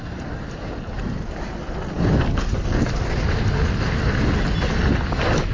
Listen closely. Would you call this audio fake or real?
real